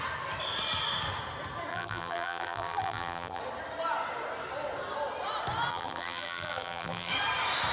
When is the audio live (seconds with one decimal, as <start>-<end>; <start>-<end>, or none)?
0.0-1.7; 3.4-5.7; 7.1-7.7

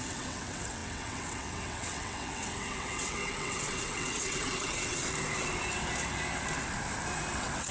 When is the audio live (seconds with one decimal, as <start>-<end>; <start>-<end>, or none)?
5.0-7.3

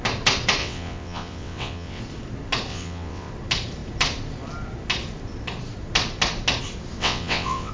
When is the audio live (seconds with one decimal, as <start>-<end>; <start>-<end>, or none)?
0.0-0.6; 2.0-2.7; 3.3-7.0

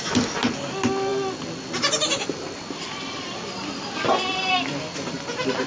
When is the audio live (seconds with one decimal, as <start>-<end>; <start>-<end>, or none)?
0.0-5.7

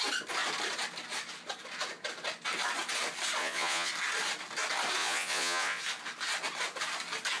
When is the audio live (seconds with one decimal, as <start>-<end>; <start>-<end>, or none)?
0.0-3.4; 3.9-5.0; 5.8-7.4